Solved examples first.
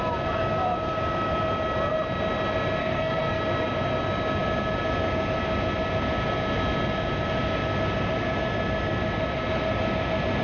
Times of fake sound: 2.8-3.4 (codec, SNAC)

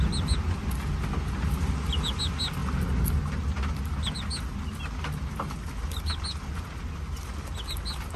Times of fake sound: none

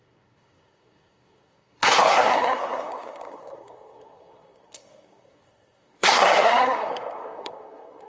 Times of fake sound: 0.0-8.1 (codec, SNAC)